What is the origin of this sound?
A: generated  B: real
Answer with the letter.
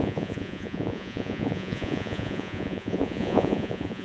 A